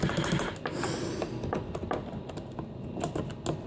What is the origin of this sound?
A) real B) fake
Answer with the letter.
A